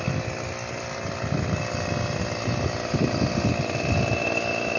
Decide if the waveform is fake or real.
real